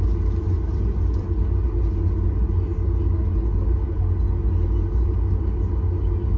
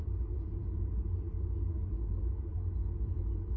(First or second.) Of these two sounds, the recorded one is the first